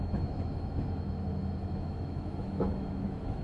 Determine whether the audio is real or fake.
fake